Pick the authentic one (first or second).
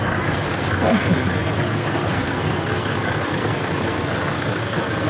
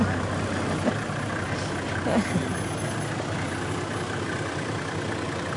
second